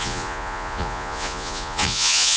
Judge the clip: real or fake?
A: fake